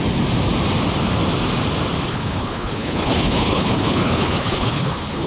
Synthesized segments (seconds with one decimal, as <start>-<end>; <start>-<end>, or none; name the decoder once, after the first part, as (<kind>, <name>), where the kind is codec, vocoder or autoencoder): 2.1-5.3 (codec, HILCodec)